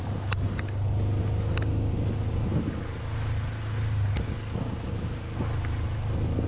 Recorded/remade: recorded